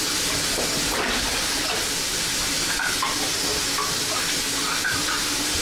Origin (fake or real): real